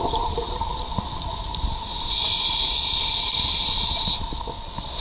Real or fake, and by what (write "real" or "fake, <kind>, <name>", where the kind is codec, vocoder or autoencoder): real